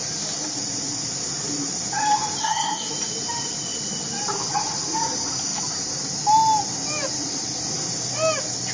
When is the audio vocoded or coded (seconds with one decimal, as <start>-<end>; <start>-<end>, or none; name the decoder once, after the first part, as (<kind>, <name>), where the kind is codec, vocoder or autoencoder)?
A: 2.4-2.9 (codec, SNAC)